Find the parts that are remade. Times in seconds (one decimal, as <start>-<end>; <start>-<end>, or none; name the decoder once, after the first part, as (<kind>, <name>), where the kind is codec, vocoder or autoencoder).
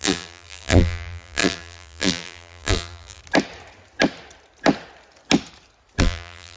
0.0-3.2 (vocoder, BigVGAN v2); 6.0-6.6